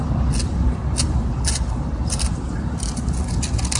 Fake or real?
real